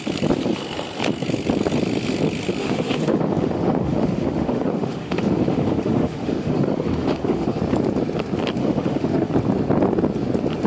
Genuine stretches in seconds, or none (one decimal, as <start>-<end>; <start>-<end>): 0.0-2.6; 7.6-8.6; 9.3-10.7